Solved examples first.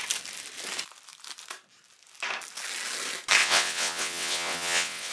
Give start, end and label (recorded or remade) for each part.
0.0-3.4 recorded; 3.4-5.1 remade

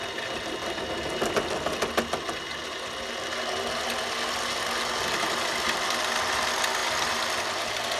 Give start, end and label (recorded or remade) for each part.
0.0-0.8 remade; 0.8-8.0 recorded

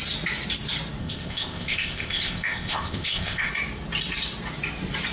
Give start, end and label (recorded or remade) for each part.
0.0-1.0 recorded; 1.0-3.5 remade; 3.5-5.1 recorded

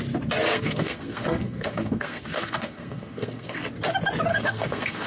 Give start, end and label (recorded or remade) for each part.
0.0-0.5 recorded; 0.5-3.6 remade; 3.6-4.3 recorded; 4.3-5.1 remade

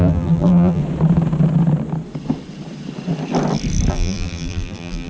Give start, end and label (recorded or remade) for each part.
0.0-0.8 remade; 0.8-3.9 recorded; 3.9-5.1 remade

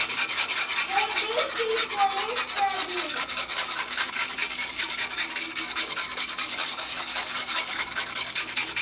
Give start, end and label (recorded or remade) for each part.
0.0-0.7 remade; 0.7-3.1 recorded; 3.1-8.8 remade

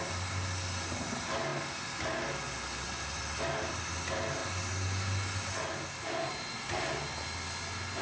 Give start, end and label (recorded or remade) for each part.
0.0-8.0 recorded

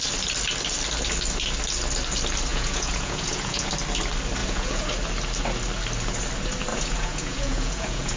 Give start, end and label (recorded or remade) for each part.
0.0-2.5 recorded; 2.5-3.7 remade; 3.7-4.4 recorded; 4.4-4.9 remade; 4.9-6.7 recorded; 6.7-8.2 remade